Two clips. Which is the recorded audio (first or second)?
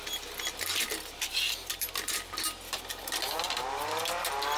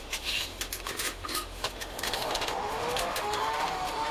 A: first